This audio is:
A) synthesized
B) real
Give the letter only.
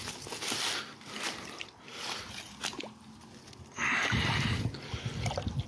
B